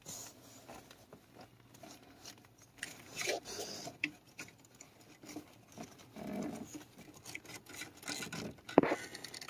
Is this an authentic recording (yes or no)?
yes